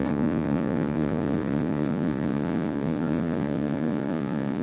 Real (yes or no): no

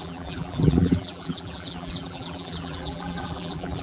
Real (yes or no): no